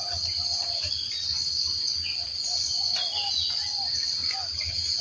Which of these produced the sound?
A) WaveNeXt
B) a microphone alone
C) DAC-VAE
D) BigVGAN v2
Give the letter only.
B